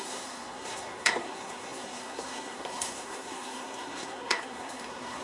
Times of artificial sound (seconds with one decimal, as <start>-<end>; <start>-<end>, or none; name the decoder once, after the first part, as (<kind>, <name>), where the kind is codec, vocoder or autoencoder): 0.0-5.2 (codec, SNAC)